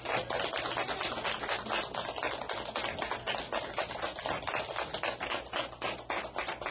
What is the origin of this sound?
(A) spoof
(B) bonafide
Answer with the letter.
B